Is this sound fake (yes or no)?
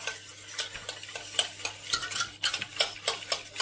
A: no